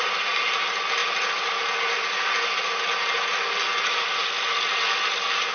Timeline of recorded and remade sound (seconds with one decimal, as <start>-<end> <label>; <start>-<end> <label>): 0.0-1.0 recorded; 1.0-2.8 remade; 2.8-5.5 recorded